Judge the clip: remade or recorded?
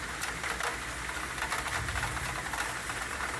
recorded